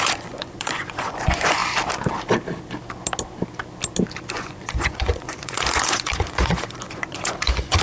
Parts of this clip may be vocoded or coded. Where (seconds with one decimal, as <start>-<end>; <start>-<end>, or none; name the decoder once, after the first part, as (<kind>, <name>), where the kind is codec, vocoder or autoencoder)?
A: 0.0-1.6 (vocoder, Vocos); 4.3-7.8